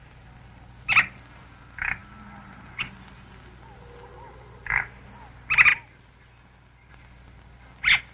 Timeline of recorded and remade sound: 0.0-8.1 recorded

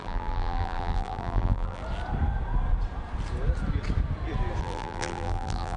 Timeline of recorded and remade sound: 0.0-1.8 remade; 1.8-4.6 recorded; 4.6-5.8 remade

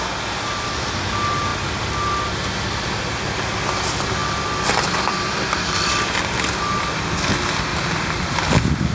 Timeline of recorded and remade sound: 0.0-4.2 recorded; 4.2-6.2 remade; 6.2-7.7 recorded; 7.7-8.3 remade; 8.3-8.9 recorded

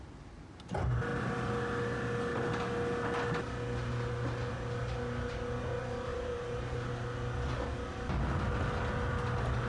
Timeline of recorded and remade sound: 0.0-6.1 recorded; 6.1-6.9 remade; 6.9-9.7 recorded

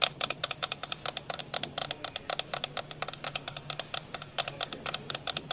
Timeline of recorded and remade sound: 0.0-1.8 remade; 1.8-5.1 recorded; 5.1-5.5 remade

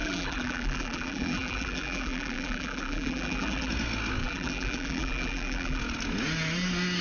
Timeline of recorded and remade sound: 0.0-3.7 remade; 3.7-4.2 recorded; 4.2-5.8 remade; 5.8-7.0 recorded

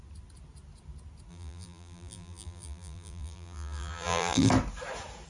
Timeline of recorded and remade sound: 0.0-1.3 recorded; 1.3-4.5 remade; 4.5-5.3 recorded

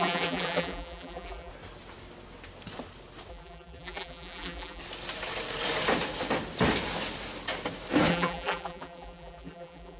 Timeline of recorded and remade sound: 0.0-1.5 remade; 1.5-3.3 recorded; 3.3-4.8 remade; 4.8-8.1 recorded; 8.1-10.0 remade